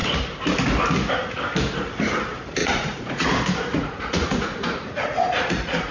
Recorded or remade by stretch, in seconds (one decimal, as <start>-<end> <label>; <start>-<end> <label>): 0.0-2.6 recorded; 2.6-3.3 remade; 3.3-3.7 recorded; 3.7-5.9 remade